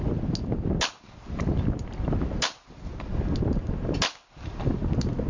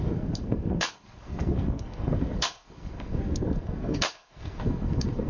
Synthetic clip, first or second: second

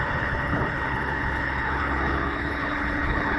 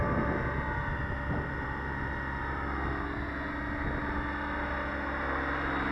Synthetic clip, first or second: first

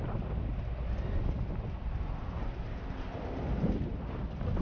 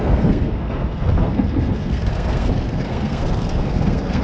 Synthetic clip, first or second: second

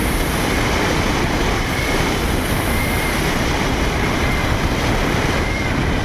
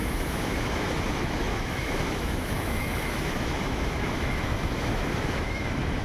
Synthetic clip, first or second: second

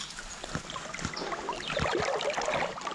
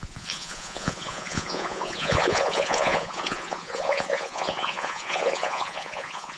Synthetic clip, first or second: second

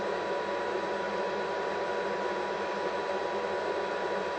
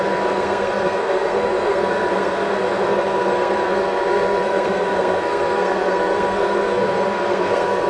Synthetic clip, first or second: second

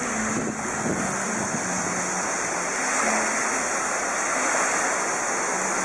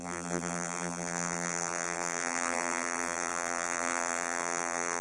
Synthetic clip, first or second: second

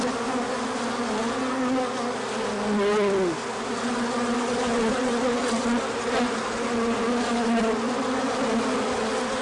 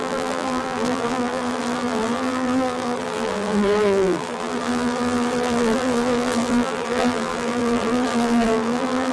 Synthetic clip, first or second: second